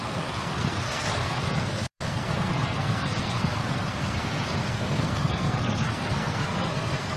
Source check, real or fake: fake